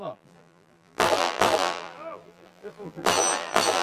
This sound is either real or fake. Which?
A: fake